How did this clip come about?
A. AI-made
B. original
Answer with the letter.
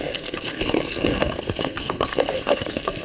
A